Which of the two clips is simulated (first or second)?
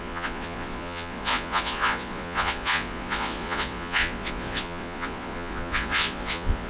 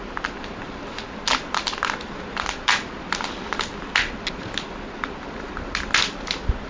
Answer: first